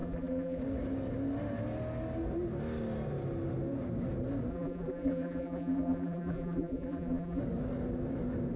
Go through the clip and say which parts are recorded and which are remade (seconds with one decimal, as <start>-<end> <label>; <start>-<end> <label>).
0.0-0.6 remade; 0.6-4.5 recorded; 4.5-7.4 remade; 7.4-8.6 recorded